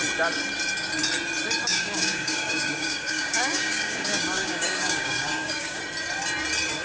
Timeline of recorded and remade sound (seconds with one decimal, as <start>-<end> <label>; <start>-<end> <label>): 0.0-1.7 recorded; 1.7-5.8 remade; 5.8-6.8 recorded

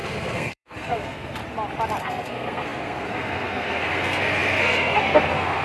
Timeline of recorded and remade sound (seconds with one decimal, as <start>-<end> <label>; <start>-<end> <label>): 0.0-1.4 remade; 1.4-2.0 recorded; 2.0-5.6 remade

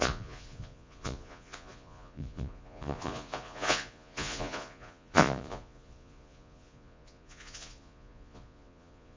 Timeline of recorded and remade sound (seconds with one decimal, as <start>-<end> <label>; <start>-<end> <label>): 0.0-9.2 remade

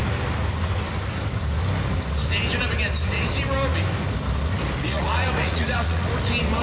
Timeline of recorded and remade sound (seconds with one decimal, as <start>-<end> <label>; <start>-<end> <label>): 0.0-4.8 recorded; 4.8-6.1 remade; 6.1-6.6 recorded

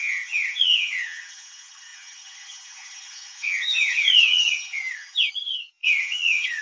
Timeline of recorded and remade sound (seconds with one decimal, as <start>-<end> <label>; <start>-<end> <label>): 0.0-6.6 remade

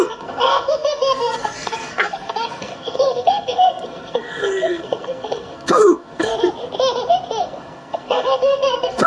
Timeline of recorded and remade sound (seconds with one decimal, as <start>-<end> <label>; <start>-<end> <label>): 0.0-6.3 remade; 6.3-7.4 recorded; 7.4-9.1 remade